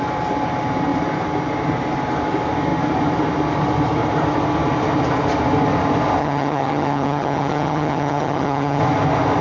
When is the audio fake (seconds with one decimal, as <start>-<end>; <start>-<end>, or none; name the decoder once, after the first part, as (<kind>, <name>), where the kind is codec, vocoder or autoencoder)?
6.2-8.8 (vocoder, HiFi-GAN)